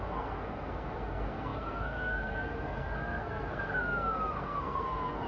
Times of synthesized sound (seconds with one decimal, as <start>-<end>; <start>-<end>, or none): 0.0-5.3